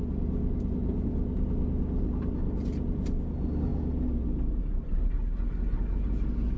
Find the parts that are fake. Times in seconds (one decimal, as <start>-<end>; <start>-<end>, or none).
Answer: none